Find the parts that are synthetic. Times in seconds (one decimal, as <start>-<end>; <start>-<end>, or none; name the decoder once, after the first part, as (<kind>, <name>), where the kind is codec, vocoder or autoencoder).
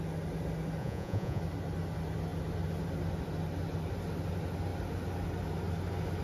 0.8-1.4 (vocoder, Vocos)